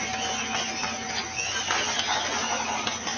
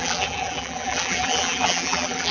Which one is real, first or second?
first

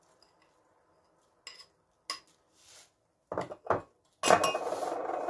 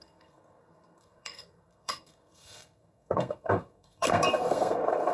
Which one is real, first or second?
first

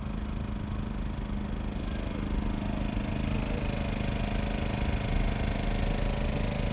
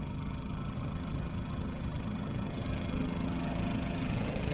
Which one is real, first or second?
first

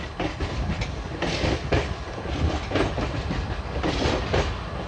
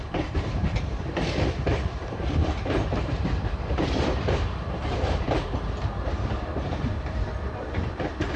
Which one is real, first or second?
first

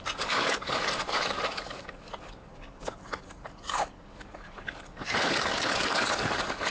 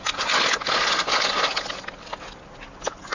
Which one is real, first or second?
second